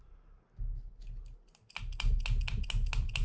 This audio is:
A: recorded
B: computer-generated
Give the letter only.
A